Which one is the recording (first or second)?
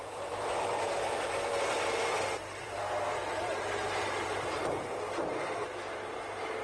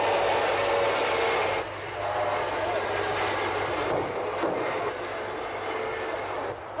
second